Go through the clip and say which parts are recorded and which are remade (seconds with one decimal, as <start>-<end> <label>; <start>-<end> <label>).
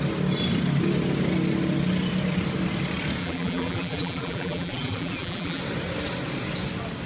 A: 0.0-3.2 recorded; 3.2-5.6 remade; 5.6-7.1 recorded